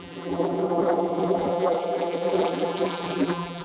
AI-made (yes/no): yes